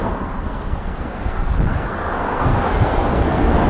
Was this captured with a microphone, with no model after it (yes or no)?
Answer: no